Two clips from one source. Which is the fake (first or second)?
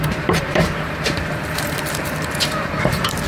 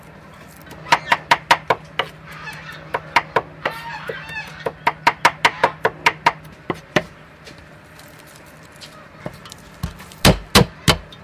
first